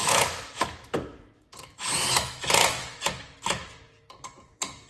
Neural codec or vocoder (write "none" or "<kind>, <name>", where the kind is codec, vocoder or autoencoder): autoencoder, DAC-VAE